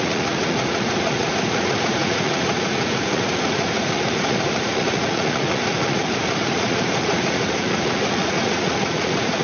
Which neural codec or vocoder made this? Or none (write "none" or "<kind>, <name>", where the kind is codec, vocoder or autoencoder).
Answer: vocoder, Vocos